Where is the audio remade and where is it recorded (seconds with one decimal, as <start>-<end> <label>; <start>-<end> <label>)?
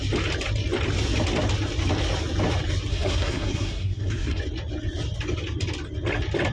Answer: 0.0-2.9 recorded; 2.9-4.4 remade; 4.4-6.5 recorded